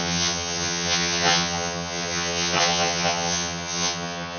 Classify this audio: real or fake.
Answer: fake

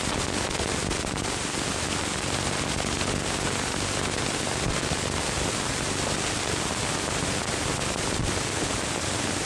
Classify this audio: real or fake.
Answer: real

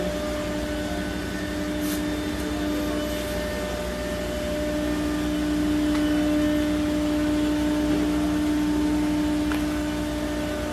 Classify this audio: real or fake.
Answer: real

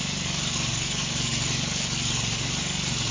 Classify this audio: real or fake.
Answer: fake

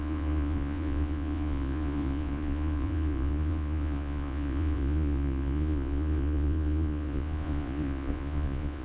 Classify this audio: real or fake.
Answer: fake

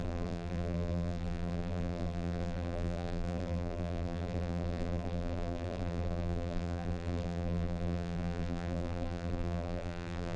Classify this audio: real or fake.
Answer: fake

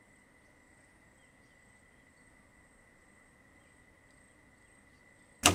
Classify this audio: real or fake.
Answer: real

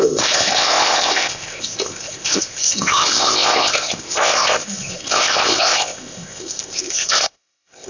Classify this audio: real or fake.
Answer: fake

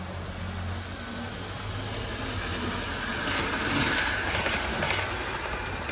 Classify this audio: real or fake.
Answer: real